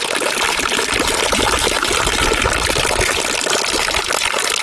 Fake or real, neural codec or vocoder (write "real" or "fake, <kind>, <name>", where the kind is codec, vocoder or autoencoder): real